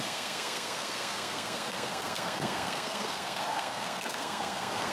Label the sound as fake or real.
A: fake